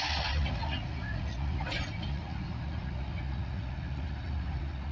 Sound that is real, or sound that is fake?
fake